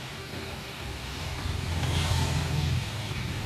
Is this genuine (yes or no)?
no